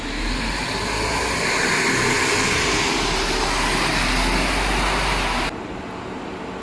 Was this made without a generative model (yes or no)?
yes